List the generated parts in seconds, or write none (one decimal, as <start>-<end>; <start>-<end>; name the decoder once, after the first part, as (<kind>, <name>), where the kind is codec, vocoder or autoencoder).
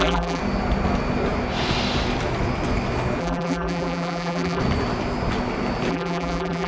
0.0-0.4 (vocoder, BigVGAN v2); 3.2-4.6; 5.9-6.7